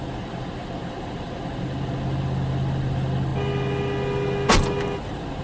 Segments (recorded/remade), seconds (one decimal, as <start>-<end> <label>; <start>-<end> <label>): 0.0-5.4 recorded